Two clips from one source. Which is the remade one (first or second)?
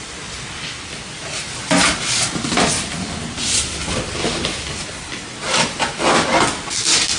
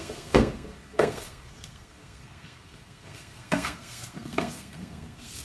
second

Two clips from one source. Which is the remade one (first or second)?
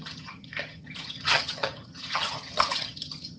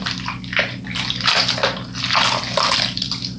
first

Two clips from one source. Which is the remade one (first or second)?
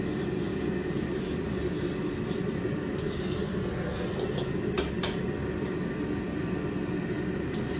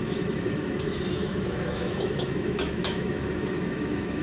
second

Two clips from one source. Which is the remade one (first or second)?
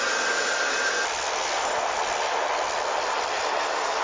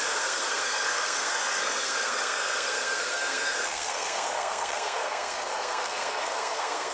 second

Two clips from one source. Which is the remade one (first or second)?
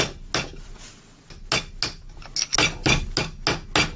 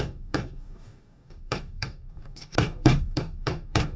second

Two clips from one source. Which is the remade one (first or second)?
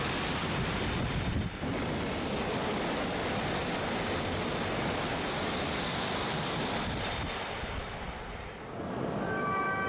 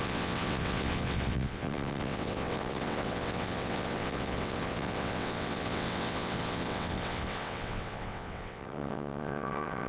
second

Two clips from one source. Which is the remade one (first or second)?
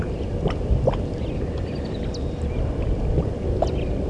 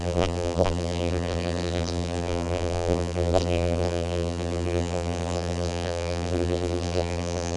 second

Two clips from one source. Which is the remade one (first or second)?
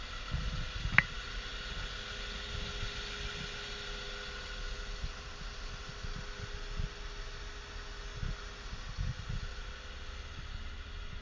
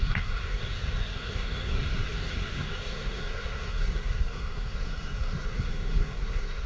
second